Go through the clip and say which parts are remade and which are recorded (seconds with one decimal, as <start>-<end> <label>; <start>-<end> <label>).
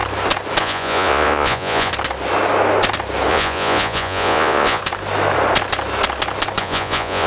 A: 0.0-0.6 recorded; 0.6-1.9 remade; 1.9-3.3 recorded; 3.3-4.8 remade; 4.8-6.6 recorded; 6.6-7.3 remade